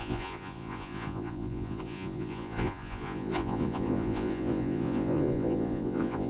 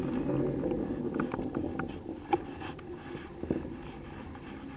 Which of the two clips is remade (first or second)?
first